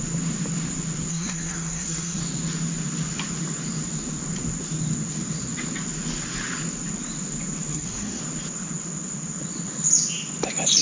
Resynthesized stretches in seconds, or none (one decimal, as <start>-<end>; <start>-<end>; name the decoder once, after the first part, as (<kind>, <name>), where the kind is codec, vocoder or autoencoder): 1.1-2.2 (codec, SNAC); 7.7-8.2